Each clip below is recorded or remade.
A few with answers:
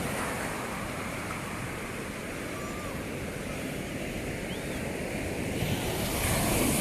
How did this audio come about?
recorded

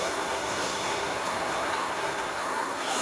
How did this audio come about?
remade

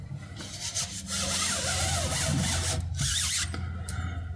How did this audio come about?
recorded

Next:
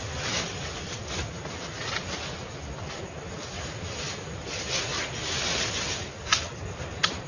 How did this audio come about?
recorded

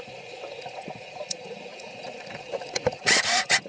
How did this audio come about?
remade